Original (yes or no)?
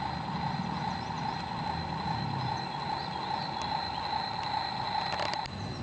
yes